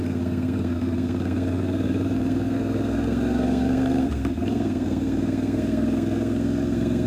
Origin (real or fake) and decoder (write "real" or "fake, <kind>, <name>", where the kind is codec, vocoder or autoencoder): fake, codec, SNAC